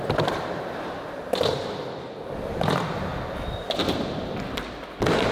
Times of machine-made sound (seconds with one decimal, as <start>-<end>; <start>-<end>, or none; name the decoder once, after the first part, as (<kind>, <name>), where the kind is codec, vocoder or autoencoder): none